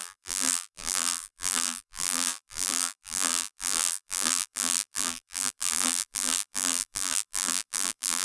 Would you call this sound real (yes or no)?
no